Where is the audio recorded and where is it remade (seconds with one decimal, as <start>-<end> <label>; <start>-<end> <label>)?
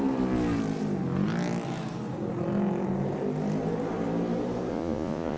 0.0-4.7 recorded; 4.7-5.4 remade